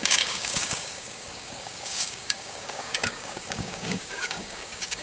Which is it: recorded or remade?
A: remade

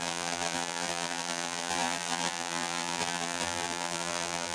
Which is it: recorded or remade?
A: remade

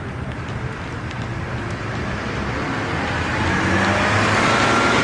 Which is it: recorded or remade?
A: recorded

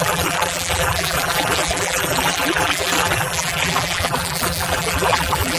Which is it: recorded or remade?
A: remade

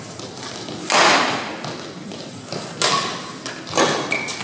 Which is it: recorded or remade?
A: recorded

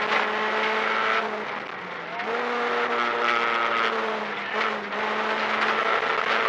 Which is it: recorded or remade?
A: recorded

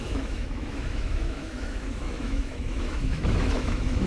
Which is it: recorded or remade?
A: remade